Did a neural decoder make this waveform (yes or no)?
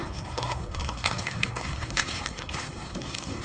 yes